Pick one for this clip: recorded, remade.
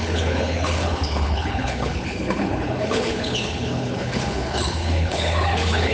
remade